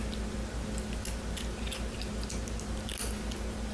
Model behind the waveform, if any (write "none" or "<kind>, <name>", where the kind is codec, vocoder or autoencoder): none